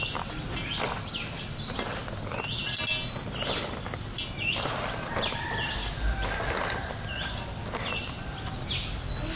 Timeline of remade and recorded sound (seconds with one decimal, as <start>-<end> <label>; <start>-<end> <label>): 0.0-9.4 recorded